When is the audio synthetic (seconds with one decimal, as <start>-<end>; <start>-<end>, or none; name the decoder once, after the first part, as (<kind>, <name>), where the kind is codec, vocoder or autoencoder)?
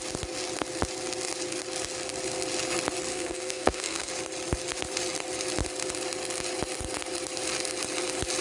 3.1-4.1 (codec, SNAC)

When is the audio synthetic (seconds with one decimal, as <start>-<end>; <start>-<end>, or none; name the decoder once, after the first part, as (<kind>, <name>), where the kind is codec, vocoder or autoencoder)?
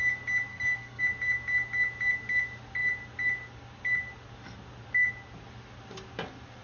0.5-1.0 (codec, SNAC)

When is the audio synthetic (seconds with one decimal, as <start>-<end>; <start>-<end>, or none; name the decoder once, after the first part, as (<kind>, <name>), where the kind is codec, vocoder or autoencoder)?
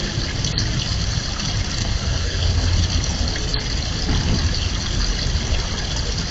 1.8-2.7 (codec, SNAC)